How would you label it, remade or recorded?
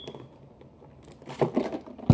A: recorded